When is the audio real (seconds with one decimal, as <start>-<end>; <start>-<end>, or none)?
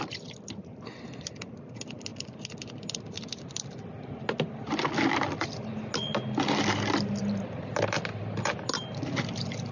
0.0-9.7